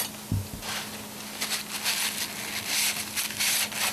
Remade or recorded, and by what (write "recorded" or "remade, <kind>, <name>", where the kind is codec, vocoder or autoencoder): recorded